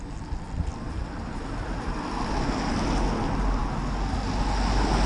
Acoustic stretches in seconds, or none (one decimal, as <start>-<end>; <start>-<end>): 0.0-5.1